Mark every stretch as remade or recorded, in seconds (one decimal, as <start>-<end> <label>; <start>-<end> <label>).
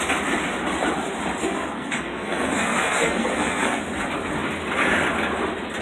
0.0-1.4 recorded; 1.4-3.8 remade; 3.8-5.8 recorded